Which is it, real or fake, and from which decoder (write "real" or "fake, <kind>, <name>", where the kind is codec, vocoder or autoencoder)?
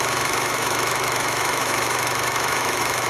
fake, autoencoder, DAC-VAE